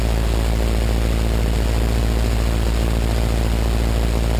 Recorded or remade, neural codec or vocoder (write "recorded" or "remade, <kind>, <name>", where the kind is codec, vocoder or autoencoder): recorded